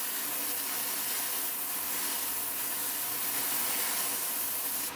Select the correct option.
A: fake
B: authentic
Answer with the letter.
B